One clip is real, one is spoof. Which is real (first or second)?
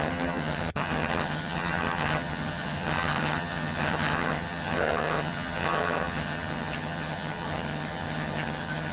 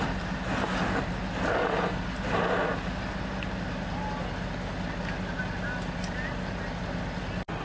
second